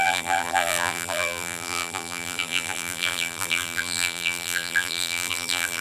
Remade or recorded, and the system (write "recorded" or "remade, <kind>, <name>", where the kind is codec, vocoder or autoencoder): remade, vocoder, BigVGAN v2